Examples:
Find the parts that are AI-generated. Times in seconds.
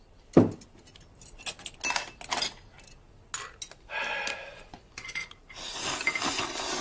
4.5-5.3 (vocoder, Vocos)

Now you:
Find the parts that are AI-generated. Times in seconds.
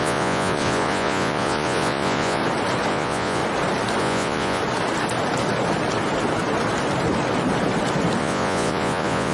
0.0-2.4 (vocoder, Vocos); 2.9-3.4; 4.0-4.6; 8.2-9.3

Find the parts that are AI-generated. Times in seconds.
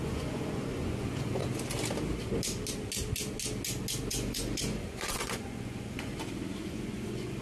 0.0-1.4 (vocoder, Vocos); 4.1-6.1; 6.7-7.4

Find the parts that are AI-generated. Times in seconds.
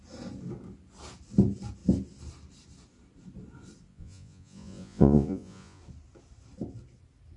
3.9-5.8 (vocoder, Vocos)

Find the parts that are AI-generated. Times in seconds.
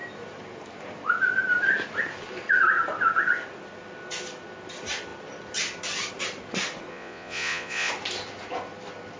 6.9-7.9 (vocoder, Vocos)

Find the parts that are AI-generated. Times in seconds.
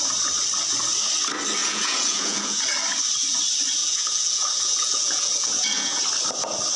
1.6-2.6 (vocoder, Vocos); 3.8-6.0